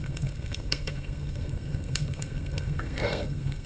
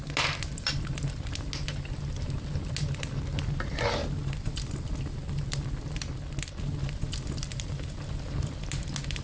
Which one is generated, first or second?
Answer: first